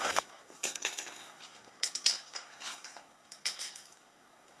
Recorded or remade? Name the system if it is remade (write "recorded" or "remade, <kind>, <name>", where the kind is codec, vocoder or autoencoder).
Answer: remade, codec, SNAC